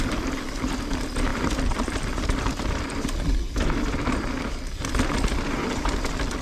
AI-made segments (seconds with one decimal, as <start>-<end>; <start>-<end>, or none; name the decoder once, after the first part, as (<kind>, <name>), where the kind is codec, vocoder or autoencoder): 1.3-4.8 (vocoder, BigVGAN v2)